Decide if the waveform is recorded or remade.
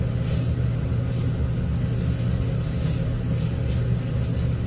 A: recorded